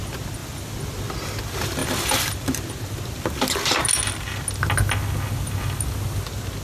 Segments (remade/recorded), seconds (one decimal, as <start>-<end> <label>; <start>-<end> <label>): 0.0-0.4 recorded; 0.4-1.1 remade; 1.1-1.8 recorded; 1.8-3.0 remade; 3.0-6.6 recorded